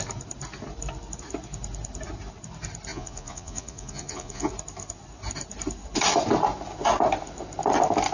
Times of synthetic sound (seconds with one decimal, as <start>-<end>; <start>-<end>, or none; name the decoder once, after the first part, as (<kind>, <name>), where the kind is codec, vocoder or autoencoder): 2.9-4.5 (vocoder, Vocos)